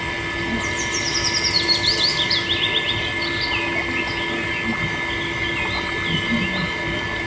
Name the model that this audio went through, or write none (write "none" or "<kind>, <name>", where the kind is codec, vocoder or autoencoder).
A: none